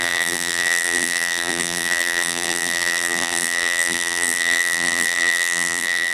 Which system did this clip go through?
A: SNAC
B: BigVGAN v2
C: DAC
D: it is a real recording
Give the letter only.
B